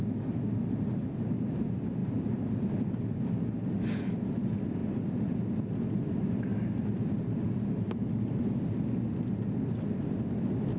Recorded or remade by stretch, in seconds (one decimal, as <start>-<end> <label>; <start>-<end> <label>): 0.0-10.8 recorded